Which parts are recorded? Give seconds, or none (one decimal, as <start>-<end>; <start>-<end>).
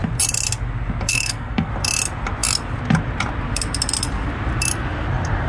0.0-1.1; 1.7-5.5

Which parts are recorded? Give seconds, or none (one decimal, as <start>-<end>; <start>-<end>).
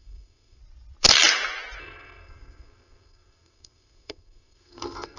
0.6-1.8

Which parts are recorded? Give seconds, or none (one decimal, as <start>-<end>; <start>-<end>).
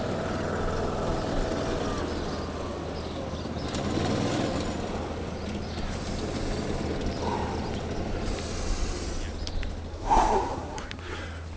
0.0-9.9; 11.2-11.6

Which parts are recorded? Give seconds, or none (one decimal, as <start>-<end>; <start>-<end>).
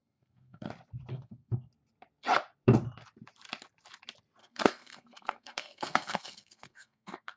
0.7-1.1; 1.7-4.4